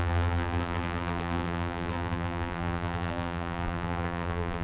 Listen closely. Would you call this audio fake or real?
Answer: fake